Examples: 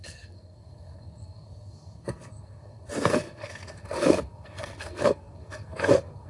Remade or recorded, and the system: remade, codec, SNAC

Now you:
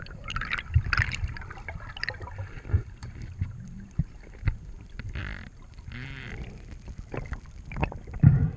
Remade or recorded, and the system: recorded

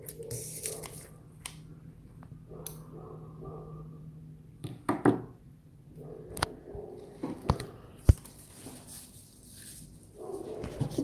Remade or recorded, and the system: recorded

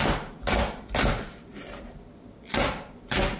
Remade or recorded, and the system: recorded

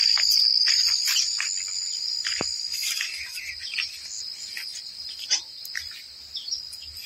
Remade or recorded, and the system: recorded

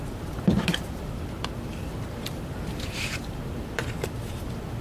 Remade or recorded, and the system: remade, vocoder, BigVGAN v2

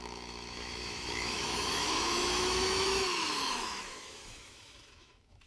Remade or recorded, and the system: remade, autoencoder, DAC-VAE